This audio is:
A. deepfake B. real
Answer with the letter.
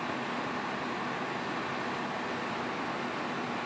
B